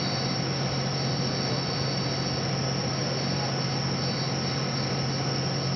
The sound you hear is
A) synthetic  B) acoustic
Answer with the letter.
B